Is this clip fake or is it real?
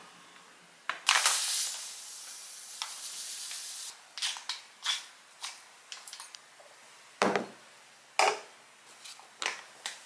real